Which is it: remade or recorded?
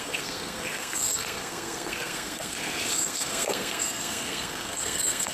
remade